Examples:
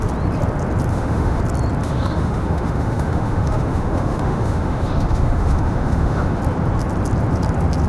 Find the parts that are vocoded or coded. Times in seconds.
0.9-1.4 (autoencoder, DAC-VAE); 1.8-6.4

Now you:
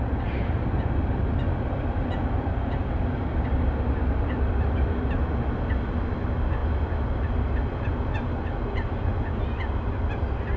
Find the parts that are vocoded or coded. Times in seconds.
none

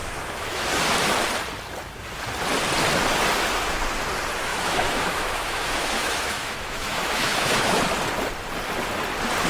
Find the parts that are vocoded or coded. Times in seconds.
0.0-0.7 (autoencoder, DAC-VAE); 4.5-7.8